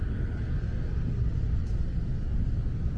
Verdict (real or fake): real